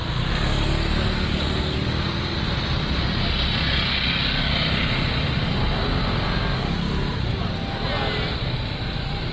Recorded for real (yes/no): yes